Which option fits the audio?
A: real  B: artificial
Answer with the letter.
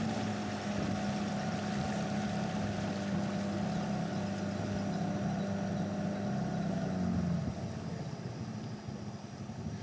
A